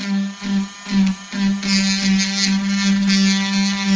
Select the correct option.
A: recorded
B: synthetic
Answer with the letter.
A